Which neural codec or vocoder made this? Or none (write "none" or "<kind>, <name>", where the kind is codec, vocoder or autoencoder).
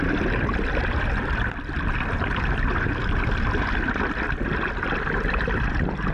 none